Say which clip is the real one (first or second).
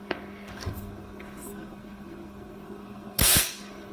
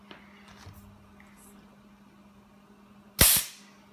second